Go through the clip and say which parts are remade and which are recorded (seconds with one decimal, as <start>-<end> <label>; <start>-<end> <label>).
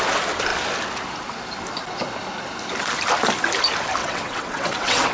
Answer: 0.0-4.0 recorded; 4.0-5.1 remade